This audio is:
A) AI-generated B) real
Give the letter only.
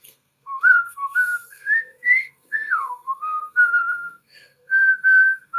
A